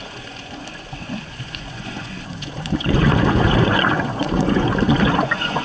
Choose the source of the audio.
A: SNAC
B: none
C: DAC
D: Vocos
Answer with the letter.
D